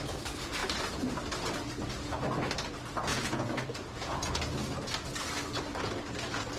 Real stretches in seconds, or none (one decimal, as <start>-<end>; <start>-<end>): 0.0-3.1; 4.4-6.6